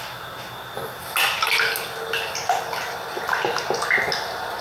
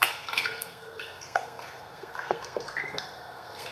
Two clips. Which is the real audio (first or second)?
first